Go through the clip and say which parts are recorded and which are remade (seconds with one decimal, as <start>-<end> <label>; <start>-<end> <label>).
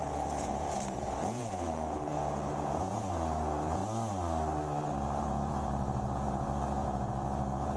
0.0-3.8 remade; 3.8-5.2 recorded; 5.2-7.8 remade